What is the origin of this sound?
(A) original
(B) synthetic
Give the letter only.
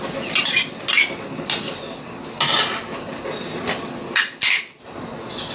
A